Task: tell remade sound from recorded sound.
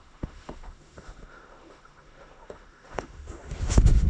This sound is remade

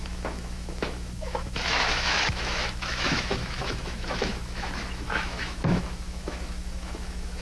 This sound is remade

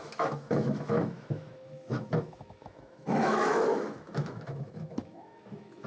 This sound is remade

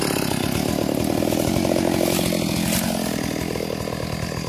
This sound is recorded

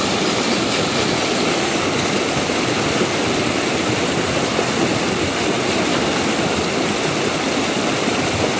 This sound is recorded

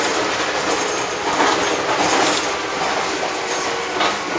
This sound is recorded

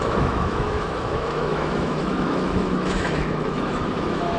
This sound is remade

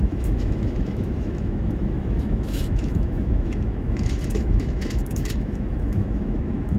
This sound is remade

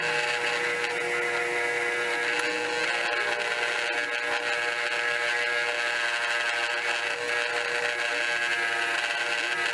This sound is recorded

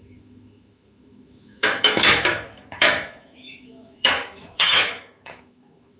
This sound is remade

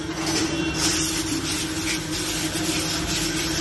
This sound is recorded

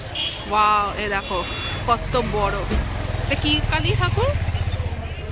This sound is recorded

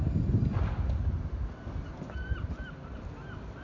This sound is recorded